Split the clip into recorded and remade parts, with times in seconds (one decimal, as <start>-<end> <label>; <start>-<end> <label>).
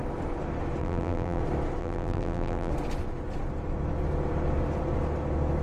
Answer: 0.0-0.8 recorded; 0.8-1.4 remade; 1.4-1.8 recorded; 1.8-2.7 remade; 2.7-5.6 recorded